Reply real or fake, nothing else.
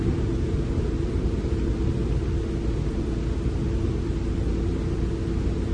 real